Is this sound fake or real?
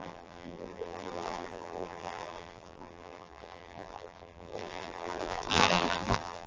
fake